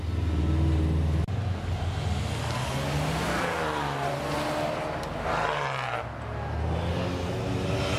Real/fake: real